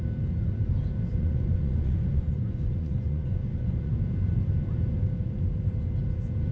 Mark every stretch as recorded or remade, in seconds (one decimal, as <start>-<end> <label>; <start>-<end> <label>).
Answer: 0.0-1.1 recorded; 1.1-3.9 remade; 3.9-6.5 recorded

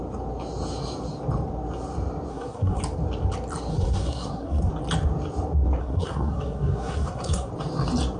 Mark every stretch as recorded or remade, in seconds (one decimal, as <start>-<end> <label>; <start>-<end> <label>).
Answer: 0.0-2.3 recorded; 2.3-2.8 remade; 2.8-3.7 recorded; 3.7-4.7 remade; 4.7-5.8 recorded; 5.8-7.5 remade; 7.5-8.2 recorded